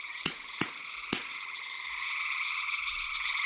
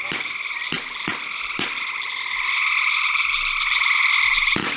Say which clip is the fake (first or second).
first